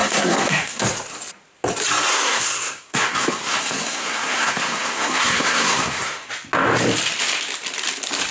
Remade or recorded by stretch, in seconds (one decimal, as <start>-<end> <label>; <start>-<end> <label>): 0.0-0.8 remade; 0.8-2.1 recorded; 2.1-6.3 remade; 6.3-8.3 recorded